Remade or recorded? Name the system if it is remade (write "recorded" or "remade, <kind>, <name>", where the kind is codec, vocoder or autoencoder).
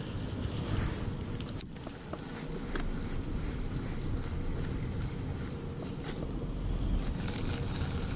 recorded